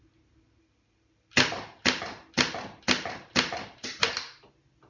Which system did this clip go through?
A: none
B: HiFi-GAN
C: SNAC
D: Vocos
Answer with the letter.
A